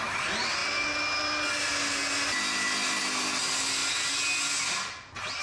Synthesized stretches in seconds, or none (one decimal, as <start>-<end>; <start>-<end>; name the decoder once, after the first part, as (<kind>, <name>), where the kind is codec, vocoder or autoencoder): none